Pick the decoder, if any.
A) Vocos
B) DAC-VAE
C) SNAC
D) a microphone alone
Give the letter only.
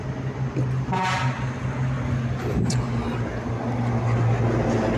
D